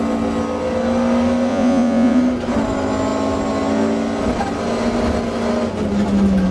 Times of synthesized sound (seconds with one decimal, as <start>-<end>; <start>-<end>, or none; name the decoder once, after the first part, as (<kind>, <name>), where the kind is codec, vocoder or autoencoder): 1.5-2.2 (vocoder, Vocos)